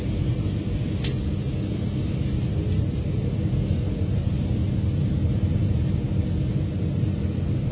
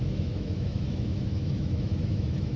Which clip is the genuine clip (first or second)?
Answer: first